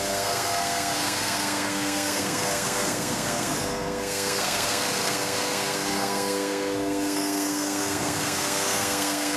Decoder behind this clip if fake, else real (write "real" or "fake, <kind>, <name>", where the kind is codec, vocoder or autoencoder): fake, codec, SNAC